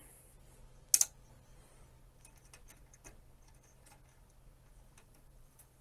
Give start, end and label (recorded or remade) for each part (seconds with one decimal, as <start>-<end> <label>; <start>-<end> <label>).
0.0-5.0 recorded; 5.0-5.8 remade